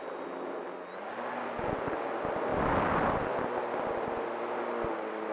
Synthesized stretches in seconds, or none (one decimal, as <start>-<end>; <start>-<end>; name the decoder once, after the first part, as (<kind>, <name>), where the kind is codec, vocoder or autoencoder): none